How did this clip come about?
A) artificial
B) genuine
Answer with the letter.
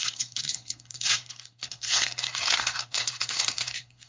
A